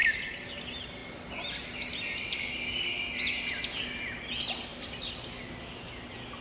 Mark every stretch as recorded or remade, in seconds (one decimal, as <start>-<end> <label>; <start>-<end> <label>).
0.0-4.7 recorded; 4.7-5.5 remade; 5.5-6.4 recorded